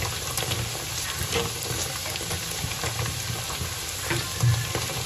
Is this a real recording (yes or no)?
yes